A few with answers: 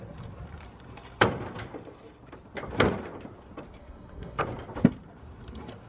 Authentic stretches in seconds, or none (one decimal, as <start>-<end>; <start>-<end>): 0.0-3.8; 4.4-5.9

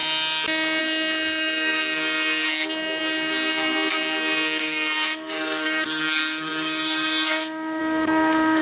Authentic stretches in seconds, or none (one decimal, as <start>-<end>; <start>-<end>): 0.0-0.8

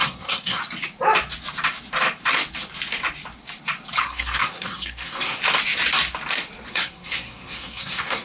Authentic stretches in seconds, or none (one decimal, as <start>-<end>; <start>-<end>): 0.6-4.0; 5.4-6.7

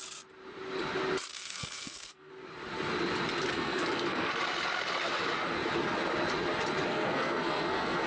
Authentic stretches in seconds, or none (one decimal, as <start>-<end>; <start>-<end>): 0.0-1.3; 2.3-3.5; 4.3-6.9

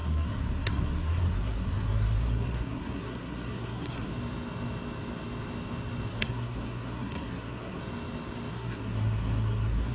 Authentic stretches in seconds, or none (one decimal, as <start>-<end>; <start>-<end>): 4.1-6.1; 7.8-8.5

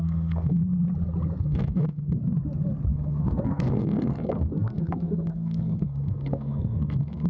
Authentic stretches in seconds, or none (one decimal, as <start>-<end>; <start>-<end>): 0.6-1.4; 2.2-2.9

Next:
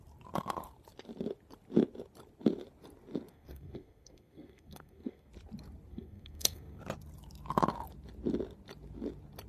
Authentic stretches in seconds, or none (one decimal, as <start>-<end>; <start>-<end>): 0.0-3.3; 5.3-5.9; 6.8-9.5